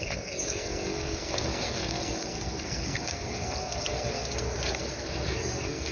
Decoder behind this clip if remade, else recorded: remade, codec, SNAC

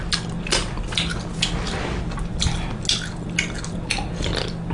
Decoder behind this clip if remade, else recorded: recorded